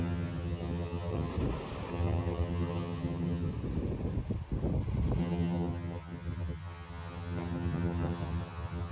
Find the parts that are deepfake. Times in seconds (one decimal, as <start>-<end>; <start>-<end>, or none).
0.0-1.3; 1.9-3.5; 5.2-8.9